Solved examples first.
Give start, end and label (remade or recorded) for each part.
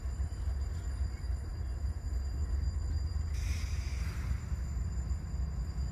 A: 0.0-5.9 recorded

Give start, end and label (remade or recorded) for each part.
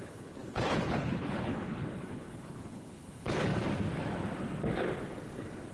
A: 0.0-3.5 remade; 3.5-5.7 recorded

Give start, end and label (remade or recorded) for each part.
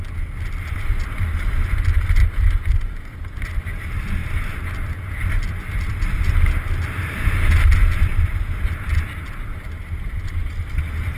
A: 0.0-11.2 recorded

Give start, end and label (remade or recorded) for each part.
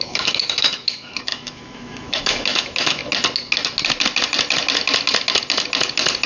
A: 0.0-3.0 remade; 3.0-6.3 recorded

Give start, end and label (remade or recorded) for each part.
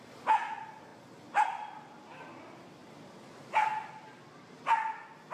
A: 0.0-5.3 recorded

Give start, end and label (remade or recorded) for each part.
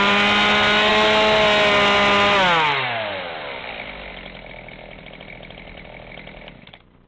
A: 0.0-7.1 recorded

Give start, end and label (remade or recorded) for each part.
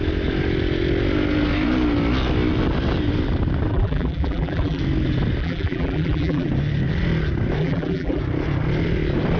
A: 0.0-3.7 recorded; 3.7-4.8 remade; 4.8-5.4 recorded; 5.4-6.5 remade; 6.5-7.6 recorded; 7.6-8.2 remade; 8.2-9.4 recorded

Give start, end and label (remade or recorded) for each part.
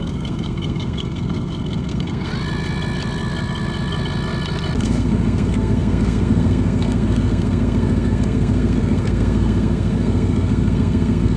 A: 0.0-2.3 remade; 2.3-4.8 recorded; 4.8-11.4 remade